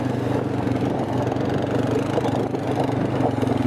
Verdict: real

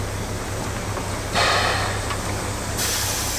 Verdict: real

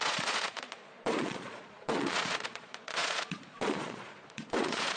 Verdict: fake